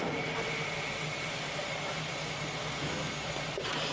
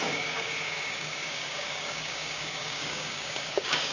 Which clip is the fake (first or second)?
second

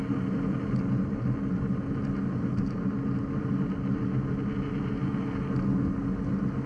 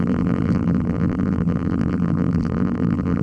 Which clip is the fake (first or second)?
second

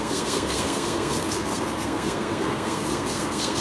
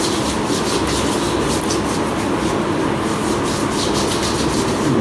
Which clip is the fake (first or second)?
first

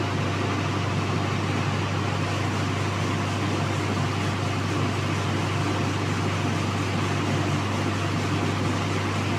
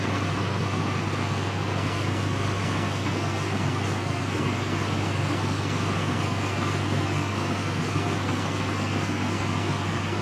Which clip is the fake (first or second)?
second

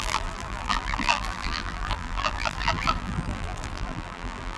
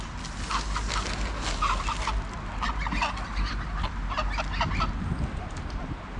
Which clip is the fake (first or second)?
first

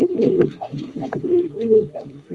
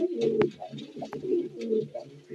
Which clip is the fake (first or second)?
first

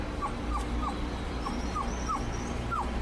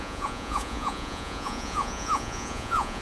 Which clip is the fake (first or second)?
second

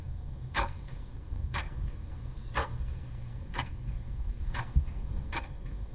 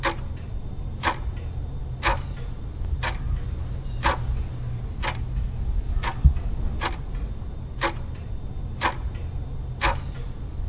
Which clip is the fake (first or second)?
first